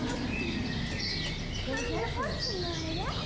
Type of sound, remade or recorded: recorded